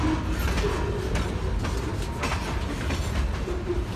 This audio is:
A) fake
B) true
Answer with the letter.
B